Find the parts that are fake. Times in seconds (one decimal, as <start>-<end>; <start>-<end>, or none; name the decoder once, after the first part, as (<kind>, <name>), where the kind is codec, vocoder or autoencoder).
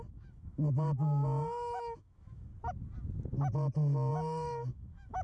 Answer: 0.0-2.5 (autoencoder, DAC-VAE); 4.1-5.2